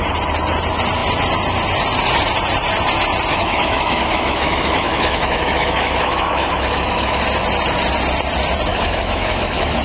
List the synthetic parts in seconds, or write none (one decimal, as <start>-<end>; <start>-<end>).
3.3-7.2; 8.7-9.8